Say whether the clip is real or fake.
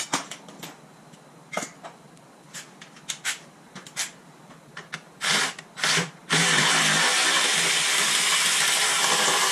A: real